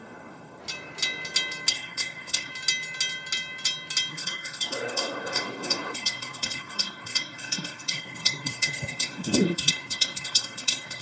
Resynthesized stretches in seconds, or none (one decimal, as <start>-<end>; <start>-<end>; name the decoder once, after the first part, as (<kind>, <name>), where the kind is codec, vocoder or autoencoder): 0.0-0.6 (codec, SNAC); 1.7-2.5; 4.1-11.0